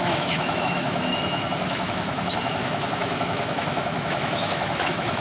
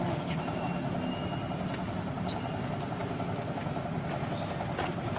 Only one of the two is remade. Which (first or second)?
first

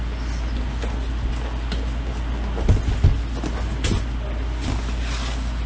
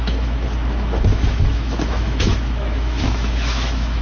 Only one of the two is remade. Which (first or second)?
second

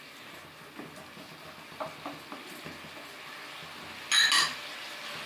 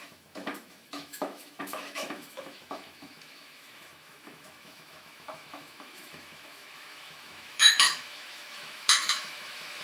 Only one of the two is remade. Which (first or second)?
second